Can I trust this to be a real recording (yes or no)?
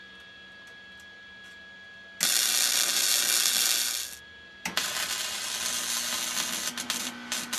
yes